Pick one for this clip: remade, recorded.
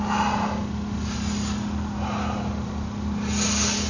recorded